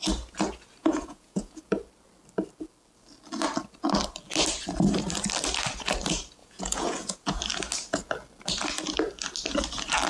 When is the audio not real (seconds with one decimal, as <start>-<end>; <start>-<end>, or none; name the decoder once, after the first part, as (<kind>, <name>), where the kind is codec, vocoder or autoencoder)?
0.8-1.7 (vocoder, Vocos); 6.4-7.4